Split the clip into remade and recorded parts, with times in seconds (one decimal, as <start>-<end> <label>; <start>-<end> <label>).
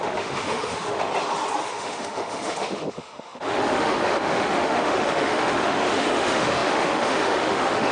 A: 0.0-1.1 remade; 1.1-1.6 recorded; 1.6-7.9 remade